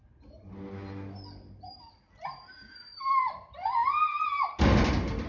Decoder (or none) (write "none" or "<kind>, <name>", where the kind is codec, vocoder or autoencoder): none